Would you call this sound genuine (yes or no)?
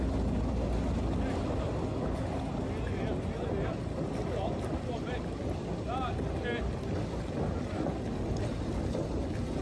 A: yes